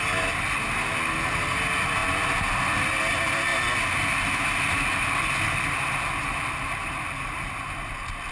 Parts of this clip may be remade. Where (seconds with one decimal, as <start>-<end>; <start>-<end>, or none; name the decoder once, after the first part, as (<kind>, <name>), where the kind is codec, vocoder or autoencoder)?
none